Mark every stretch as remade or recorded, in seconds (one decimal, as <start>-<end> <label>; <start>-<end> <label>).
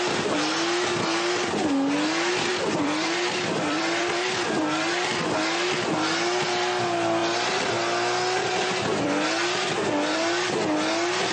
0.0-2.5 recorded; 2.5-4.9 remade; 4.9-11.3 recorded